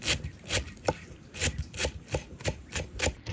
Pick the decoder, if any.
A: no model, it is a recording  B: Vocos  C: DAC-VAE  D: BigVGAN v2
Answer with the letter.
A